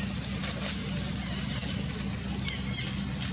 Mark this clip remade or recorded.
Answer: recorded